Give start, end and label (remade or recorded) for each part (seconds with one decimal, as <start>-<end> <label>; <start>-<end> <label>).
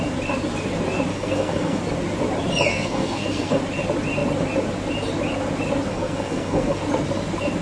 0.0-1.1 recorded; 1.1-1.8 remade; 1.8-2.7 recorded; 2.7-3.6 remade; 3.6-5.9 recorded; 5.9-6.8 remade; 6.8-7.6 recorded